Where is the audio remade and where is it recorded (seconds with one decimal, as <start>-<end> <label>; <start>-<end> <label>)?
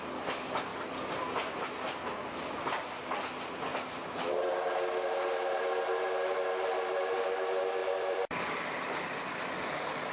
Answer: 0.0-0.7 recorded; 0.7-1.5 remade; 1.5-3.7 recorded; 3.7-4.3 remade; 4.3-7.8 recorded; 7.8-9.3 remade; 9.3-10.1 recorded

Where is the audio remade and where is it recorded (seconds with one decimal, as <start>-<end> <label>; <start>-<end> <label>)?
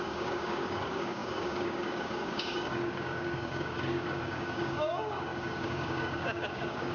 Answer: 0.0-6.9 remade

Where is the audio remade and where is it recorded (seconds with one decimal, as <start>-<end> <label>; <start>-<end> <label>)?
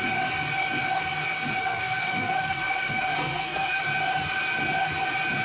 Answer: 0.0-1.6 recorded; 1.6-3.8 remade; 3.8-5.4 recorded